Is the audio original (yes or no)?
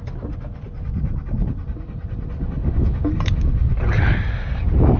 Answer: yes